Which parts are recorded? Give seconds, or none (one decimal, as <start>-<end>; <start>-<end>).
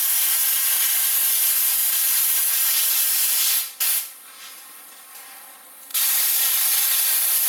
0.0-1.8; 2.9-5.9; 7.0-7.5